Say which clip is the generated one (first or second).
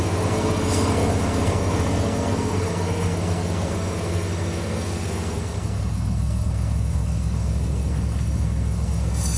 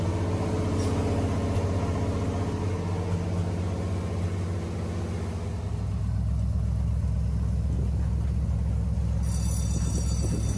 first